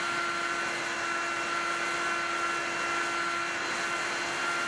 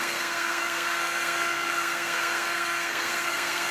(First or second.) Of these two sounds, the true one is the first